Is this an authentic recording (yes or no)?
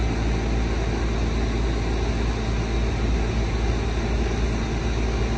yes